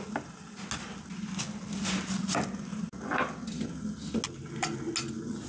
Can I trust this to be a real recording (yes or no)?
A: yes